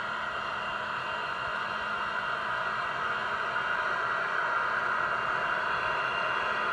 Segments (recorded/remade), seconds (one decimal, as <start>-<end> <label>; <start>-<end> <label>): 0.0-1.2 recorded; 1.2-5.0 remade; 5.0-6.7 recorded